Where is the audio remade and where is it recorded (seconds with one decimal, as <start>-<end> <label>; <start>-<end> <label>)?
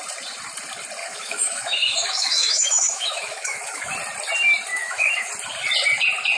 0.0-1.0 recorded; 1.0-3.9 remade; 3.9-4.7 recorded; 4.7-5.3 remade; 5.3-6.4 recorded